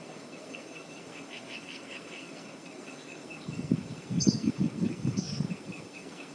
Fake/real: fake